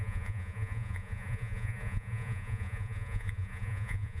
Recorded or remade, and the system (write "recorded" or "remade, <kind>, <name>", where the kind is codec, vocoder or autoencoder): remade, vocoder, Vocos